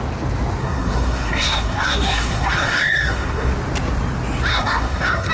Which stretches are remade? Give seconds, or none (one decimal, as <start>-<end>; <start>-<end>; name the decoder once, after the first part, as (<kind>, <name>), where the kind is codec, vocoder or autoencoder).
0.6-3.5 (codec, SNAC); 4.5-5.3

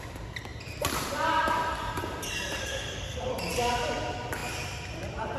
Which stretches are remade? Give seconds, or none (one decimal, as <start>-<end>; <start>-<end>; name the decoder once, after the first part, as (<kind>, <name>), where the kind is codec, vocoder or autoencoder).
2.6-3.3 (codec, SNAC)

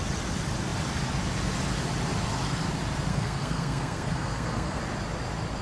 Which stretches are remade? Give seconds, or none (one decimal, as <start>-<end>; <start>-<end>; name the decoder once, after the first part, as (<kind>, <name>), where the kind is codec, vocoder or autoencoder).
3.1-4.8 (codec, SNAC)

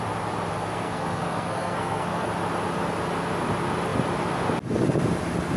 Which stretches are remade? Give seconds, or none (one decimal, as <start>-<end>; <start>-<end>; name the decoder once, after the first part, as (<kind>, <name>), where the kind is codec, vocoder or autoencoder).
0.5-2.3 (codec, SNAC)

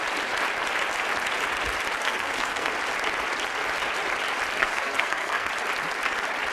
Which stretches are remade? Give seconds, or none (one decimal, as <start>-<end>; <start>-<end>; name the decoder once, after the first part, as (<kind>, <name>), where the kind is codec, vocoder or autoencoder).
2.0-2.7 (codec, SNAC); 4.6-5.5